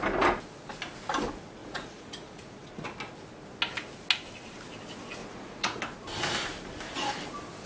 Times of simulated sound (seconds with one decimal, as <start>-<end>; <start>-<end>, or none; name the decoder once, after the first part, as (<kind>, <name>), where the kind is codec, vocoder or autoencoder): 1.6-2.7 (vocoder, Vocos); 5.2-5.8